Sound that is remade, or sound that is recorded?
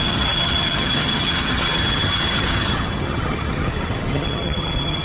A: remade